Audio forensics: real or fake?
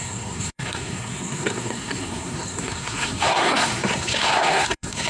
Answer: fake